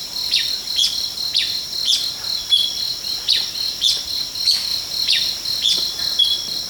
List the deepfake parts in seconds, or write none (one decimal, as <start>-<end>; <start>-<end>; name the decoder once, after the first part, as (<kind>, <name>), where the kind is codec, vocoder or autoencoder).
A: none